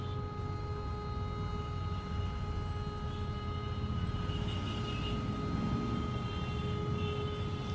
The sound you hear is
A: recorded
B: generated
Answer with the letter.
A